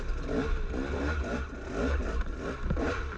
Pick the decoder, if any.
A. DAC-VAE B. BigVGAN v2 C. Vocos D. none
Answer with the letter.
D